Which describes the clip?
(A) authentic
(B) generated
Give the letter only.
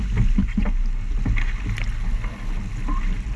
A